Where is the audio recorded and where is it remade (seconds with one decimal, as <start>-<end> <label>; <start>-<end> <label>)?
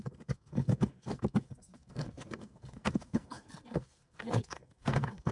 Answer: 0.0-5.3 remade